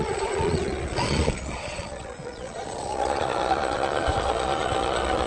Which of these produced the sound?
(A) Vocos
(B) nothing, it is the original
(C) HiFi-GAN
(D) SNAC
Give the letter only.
A